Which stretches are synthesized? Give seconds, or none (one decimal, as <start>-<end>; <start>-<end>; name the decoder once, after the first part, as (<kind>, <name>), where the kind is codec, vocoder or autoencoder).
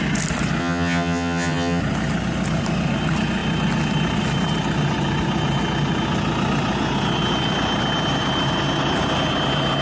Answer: 0.6-1.8 (vocoder, HiFi-GAN)